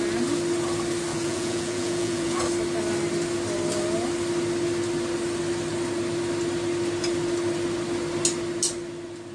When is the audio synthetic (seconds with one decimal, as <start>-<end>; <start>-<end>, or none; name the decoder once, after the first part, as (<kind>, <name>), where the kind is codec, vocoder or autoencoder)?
1.1-2.5 (vocoder, Vocos)